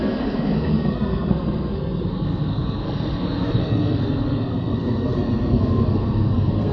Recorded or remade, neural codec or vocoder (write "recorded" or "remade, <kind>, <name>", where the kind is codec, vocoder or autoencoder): remade, codec, SNAC